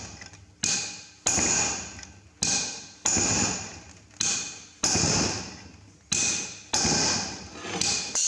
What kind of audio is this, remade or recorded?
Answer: recorded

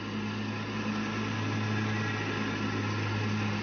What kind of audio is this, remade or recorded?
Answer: recorded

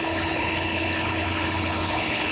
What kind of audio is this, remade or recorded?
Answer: remade